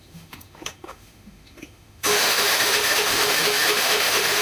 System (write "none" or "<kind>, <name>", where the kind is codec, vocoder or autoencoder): autoencoder, DAC-VAE